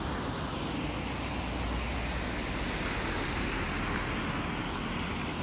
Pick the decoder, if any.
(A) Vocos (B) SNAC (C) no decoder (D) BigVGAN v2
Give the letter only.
C